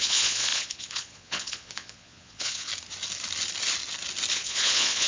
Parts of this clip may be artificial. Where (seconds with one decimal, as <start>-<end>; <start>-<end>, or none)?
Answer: 0.0-2.7; 4.3-5.1